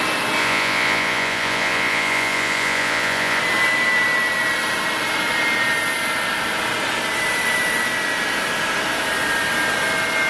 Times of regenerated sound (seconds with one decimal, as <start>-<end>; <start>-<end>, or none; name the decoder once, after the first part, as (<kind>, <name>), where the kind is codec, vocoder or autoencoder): 0.4-3.4 (vocoder, Vocos)